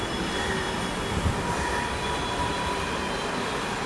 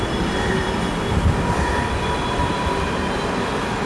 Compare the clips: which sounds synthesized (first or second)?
second